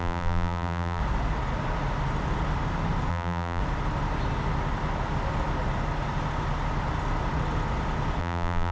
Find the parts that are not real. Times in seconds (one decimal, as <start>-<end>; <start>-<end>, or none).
0.0-1.0; 3.1-3.6; 8.2-8.7